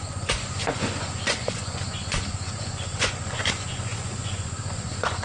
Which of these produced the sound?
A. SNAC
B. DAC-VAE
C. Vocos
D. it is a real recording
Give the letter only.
C